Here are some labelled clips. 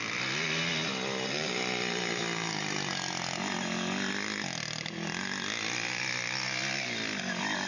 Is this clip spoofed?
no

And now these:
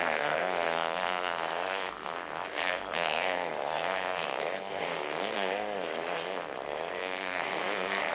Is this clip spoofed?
yes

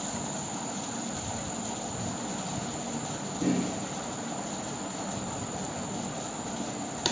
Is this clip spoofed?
no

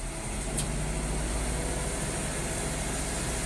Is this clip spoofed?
no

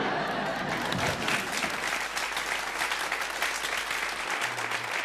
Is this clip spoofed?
no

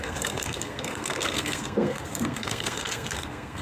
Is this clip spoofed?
yes